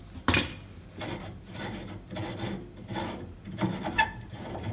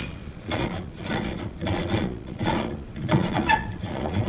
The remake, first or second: second